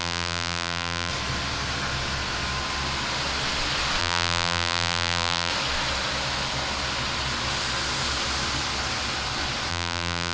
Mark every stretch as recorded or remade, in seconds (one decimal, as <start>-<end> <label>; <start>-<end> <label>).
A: 0.0-1.1 remade; 1.1-4.0 recorded; 4.0-5.5 remade; 5.5-9.7 recorded; 9.7-10.3 remade